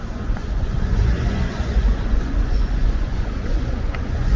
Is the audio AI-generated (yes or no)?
yes